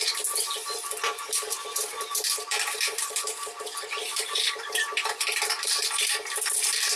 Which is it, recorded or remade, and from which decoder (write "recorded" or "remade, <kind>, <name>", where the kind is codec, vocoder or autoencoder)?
remade, vocoder, BigVGAN v2